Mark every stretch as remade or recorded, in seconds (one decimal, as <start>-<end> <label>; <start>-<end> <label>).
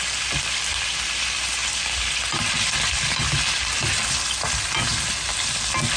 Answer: 0.0-6.0 recorded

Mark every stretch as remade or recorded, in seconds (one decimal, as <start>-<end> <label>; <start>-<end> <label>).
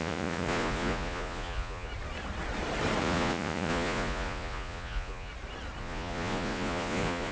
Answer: 0.0-1.9 remade; 1.9-3.0 recorded; 3.0-5.3 remade; 5.3-5.8 recorded; 5.8-7.3 remade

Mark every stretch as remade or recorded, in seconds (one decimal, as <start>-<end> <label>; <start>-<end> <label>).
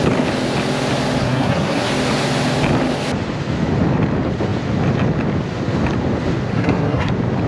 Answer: 0.0-1.2 recorded; 1.2-1.9 remade; 1.9-6.5 recorded; 6.5-7.1 remade; 7.1-7.5 recorded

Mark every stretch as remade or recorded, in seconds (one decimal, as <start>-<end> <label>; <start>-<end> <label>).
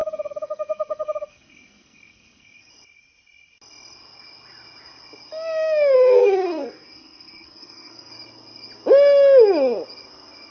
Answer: 0.0-2.7 remade; 2.7-6.2 recorded; 6.2-8.1 remade; 8.1-10.5 recorded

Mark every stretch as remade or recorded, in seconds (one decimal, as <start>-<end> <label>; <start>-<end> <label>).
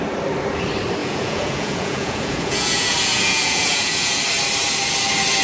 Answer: 0.0-1.0 recorded; 1.0-4.2 remade; 4.2-5.4 recorded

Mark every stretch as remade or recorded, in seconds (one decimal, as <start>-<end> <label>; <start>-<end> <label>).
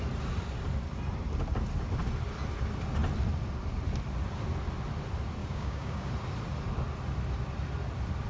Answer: 0.0-5.4 recorded; 5.4-6.1 remade; 6.1-8.3 recorded